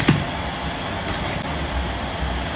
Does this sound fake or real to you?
real